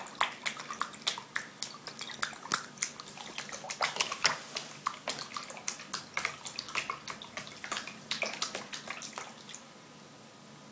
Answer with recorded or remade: recorded